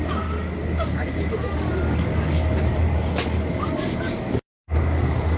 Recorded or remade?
remade